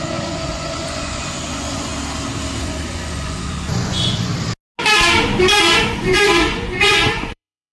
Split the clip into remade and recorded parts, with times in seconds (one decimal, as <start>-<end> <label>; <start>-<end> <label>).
0.0-1.9 remade; 1.9-2.6 recorded; 2.6-4.3 remade; 4.3-5.4 recorded; 5.4-7.7 remade